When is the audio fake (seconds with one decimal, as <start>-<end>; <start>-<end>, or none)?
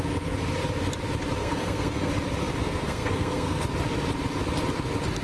1.4-2.1; 2.6-3.6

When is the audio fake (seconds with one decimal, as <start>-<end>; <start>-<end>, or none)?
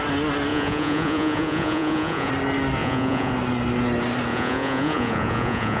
0.5-2.3; 2.8-3.3; 4.3-5.8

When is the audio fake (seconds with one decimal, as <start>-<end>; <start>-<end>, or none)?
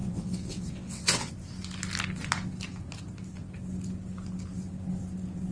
0.0-1.3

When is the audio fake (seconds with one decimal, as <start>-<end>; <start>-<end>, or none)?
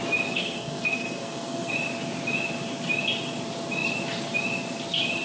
0.4-1.7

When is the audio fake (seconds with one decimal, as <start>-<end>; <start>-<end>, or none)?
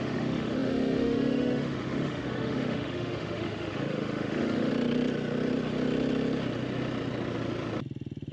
0.0-4.7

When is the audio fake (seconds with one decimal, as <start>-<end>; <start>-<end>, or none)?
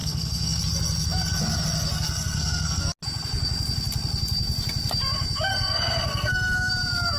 0.0-0.6; 1.9-2.8; 5.5-6.7